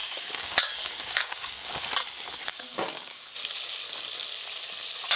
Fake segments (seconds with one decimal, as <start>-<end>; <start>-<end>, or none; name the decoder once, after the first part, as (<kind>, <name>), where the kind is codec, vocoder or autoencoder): 0.0-1.9 (codec, DAC); 2.5-3.4